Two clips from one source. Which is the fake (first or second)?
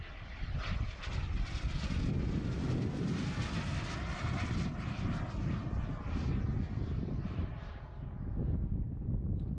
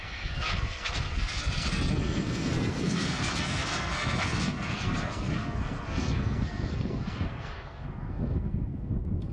second